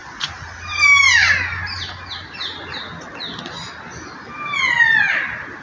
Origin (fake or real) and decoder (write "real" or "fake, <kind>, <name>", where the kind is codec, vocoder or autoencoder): real